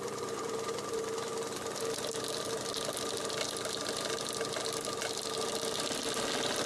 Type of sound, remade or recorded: recorded